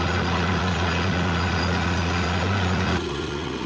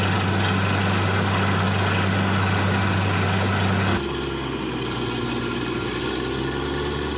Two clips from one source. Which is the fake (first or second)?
first